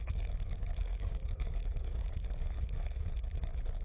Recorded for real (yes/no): no